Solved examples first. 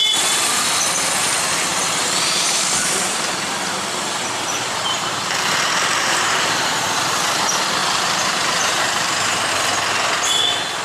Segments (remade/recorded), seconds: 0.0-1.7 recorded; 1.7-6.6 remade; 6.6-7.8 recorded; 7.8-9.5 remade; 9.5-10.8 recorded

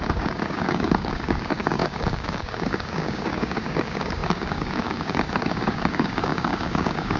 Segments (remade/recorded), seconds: 0.0-7.2 remade

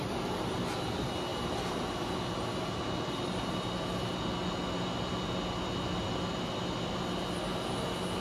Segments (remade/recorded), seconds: 0.0-8.2 recorded